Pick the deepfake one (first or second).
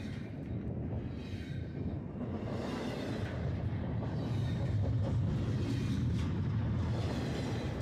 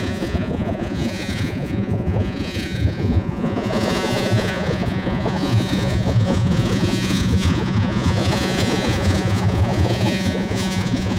second